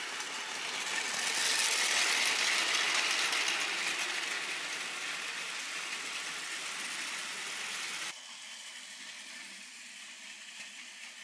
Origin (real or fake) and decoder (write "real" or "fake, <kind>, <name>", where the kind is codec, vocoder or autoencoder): real